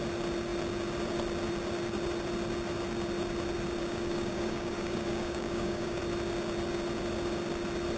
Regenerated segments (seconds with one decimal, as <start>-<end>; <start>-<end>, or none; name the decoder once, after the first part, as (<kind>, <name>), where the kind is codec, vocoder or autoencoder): 3.8-6.0 (codec, DAC)